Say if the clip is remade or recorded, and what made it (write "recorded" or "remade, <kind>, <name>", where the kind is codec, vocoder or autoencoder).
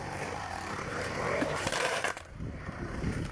remade, vocoder, BigVGAN v2